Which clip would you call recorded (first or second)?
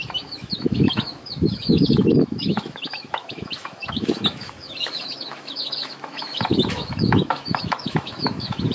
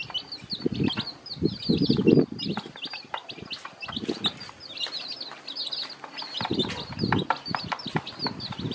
second